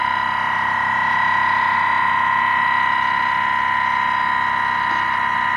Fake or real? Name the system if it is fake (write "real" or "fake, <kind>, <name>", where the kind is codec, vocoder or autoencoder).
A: real